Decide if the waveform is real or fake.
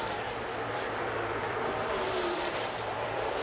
fake